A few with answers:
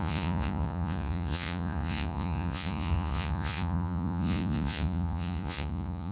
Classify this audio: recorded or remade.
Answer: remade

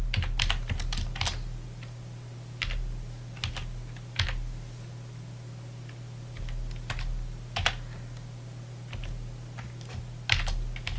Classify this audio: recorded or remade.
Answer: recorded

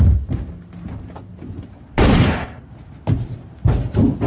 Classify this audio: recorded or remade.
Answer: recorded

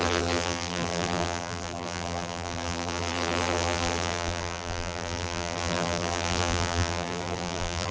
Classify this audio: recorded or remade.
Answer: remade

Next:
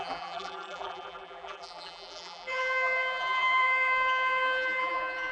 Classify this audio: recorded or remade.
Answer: remade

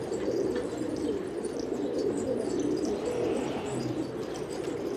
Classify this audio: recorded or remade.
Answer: recorded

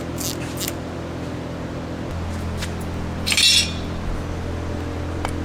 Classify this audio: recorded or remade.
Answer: recorded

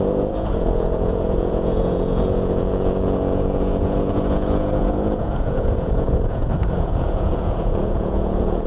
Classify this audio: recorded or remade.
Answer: remade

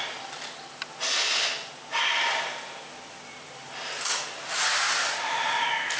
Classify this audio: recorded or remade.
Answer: recorded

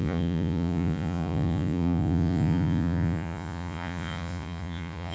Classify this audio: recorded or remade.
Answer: remade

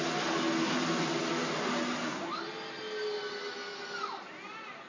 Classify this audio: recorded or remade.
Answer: recorded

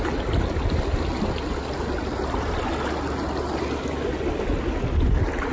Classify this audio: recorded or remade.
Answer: recorded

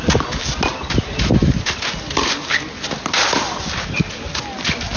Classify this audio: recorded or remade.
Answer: recorded